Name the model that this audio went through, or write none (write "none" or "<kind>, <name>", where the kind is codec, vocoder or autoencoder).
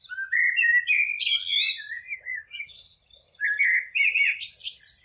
none